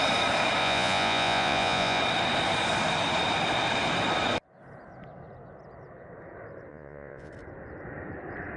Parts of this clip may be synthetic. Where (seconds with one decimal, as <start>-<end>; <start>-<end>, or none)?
0.6-2.0; 6.7-7.3